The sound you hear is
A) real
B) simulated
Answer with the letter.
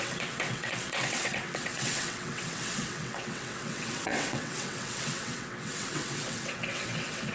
B